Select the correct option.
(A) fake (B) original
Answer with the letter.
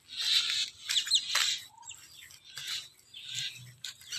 B